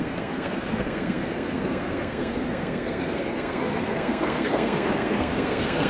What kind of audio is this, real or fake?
fake